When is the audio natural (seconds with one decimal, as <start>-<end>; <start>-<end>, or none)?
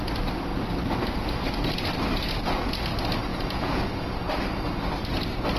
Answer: 0.0-3.3; 3.8-5.6